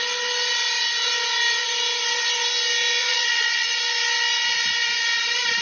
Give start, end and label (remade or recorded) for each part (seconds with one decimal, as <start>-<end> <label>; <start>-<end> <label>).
0.0-3.0 recorded; 3.0-3.7 remade; 3.7-5.6 recorded